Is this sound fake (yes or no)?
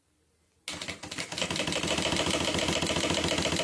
no